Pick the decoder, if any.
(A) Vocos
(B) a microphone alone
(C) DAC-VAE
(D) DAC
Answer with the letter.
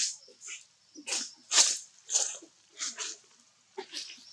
B